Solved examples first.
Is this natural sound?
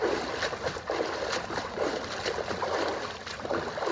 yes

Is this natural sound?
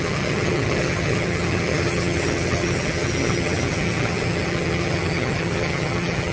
no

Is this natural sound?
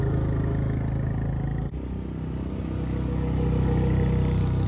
yes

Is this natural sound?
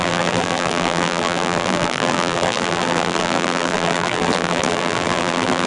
no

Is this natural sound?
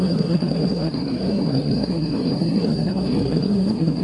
no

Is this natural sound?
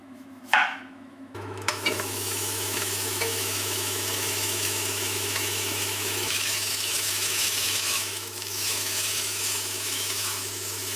no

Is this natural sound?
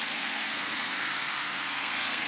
no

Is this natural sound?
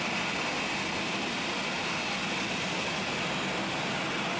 yes